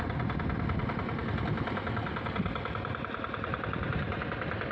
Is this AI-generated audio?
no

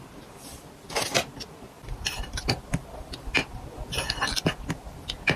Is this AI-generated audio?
no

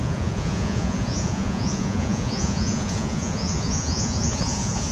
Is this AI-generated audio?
yes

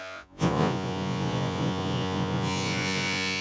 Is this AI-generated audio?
yes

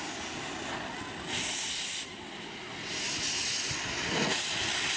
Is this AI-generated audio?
no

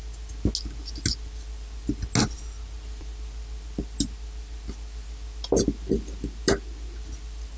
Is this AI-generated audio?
no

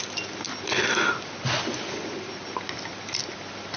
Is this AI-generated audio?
no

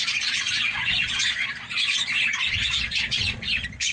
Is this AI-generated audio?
yes